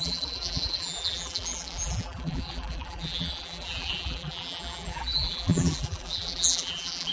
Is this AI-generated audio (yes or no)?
yes